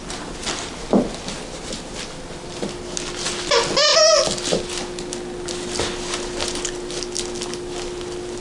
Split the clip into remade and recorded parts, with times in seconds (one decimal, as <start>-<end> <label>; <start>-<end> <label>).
0.0-8.4 recorded